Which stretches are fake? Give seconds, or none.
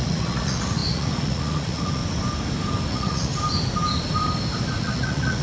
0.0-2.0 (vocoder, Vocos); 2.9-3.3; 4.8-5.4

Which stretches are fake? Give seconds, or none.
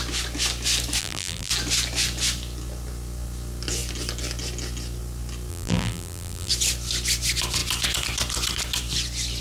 1.0-1.5 (vocoder, BigVGAN v2); 5.5-6.5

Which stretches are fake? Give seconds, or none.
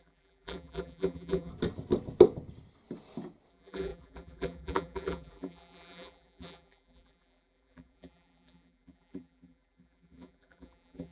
0.0-1.5 (vocoder, BigVGAN v2); 3.5-11.1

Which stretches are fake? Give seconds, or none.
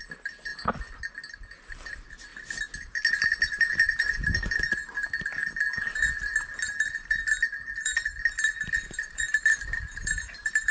0.0-0.5 (vocoder, BigVGAN v2); 1.7-2.3; 3.1-6.3; 7.7-10.7